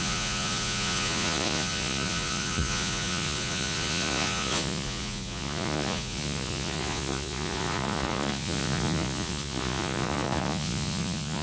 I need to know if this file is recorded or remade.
remade